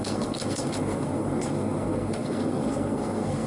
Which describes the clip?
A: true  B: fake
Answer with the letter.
B